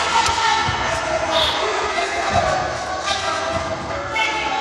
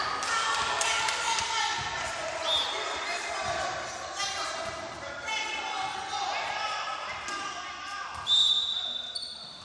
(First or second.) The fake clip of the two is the first